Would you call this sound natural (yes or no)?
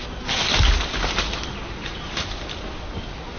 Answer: yes